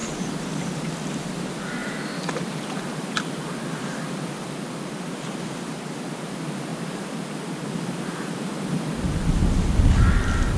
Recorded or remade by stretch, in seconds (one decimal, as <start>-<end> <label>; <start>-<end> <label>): 0.0-1.8 recorded; 1.8-5.7 remade; 5.7-6.7 recorded; 6.7-10.6 remade